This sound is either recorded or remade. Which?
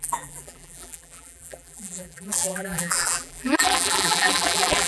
remade